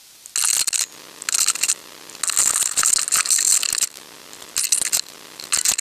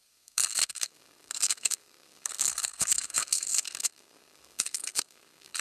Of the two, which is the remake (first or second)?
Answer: second